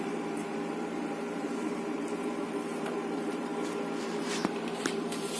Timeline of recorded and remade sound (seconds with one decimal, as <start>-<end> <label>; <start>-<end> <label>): 0.0-3.5 remade; 3.5-4.0 recorded; 4.0-5.4 remade